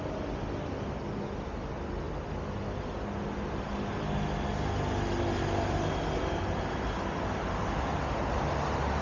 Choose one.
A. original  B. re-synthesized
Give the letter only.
A